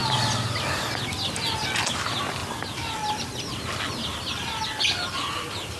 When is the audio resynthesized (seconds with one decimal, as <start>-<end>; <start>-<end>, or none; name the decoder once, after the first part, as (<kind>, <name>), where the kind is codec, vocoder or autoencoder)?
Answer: none

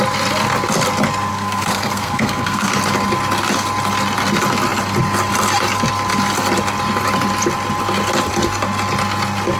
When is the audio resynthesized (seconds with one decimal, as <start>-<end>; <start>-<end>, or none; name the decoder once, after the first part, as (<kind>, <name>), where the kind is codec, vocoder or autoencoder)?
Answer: 1.3-2.7 (codec, SNAC)